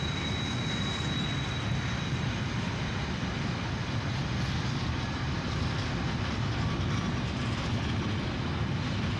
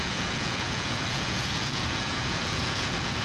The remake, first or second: second